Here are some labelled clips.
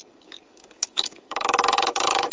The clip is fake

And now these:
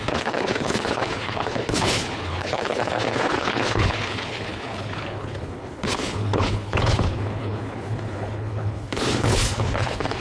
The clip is fake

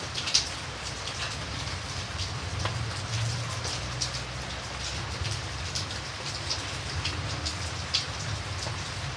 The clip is fake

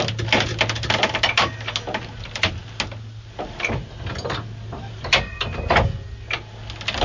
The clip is real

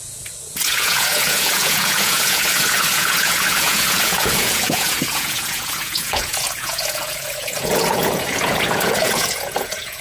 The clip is fake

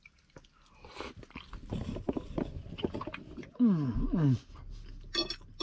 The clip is real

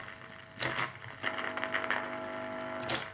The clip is real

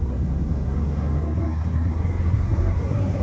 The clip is fake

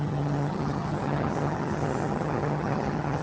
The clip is fake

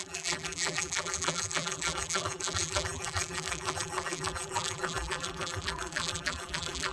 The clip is fake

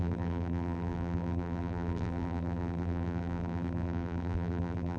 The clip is fake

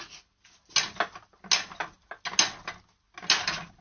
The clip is real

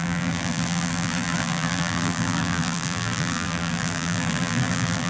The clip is fake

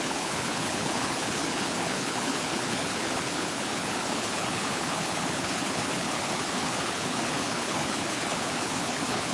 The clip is fake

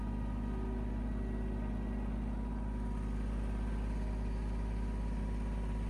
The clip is real